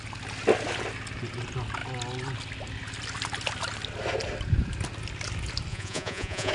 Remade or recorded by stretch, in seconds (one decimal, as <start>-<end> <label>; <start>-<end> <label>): 0.0-5.7 recorded; 5.7-6.5 remade